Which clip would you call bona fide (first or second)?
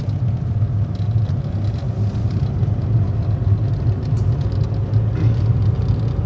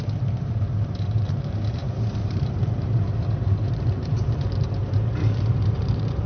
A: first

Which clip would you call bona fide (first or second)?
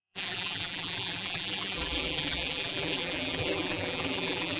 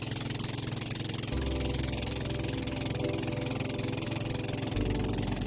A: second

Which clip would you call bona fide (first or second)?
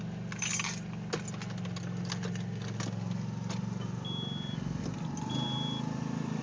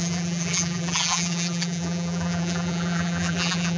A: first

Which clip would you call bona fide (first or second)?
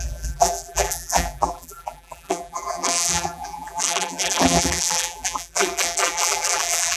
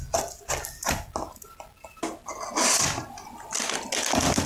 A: second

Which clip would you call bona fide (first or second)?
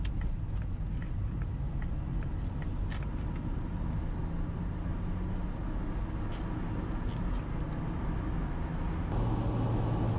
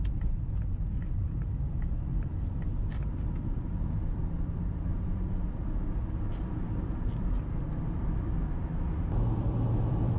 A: first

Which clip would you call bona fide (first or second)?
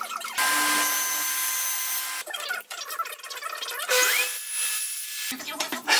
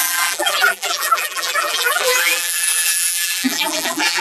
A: first